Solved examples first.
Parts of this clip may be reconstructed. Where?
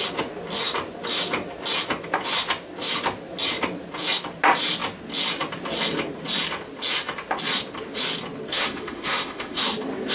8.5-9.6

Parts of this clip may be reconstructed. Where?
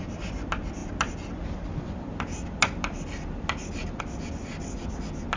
none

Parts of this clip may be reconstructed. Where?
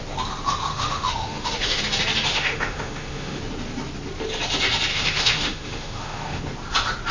0.7-1.8; 2.3-3.4; 4.9-6.4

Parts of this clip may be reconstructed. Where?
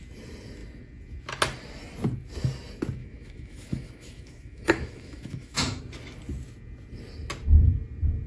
3.0-5.8